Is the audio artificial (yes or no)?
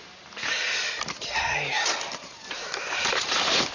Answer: no